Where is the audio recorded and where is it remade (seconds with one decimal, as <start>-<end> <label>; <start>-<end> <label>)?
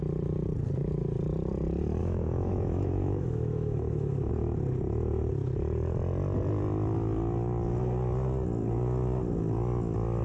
0.0-2.0 recorded; 2.0-4.3 remade; 4.3-10.2 recorded